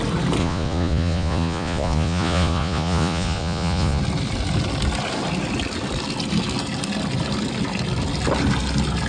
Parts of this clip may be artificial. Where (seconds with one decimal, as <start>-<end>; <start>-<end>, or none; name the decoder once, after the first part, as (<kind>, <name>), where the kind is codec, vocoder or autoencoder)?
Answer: 0.4-4.0 (vocoder, Vocos)